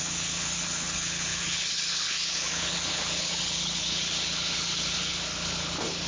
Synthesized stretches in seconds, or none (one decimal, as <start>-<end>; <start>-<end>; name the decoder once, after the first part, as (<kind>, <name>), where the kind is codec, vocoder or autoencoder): 0.0-6.1 (codec, HILCodec)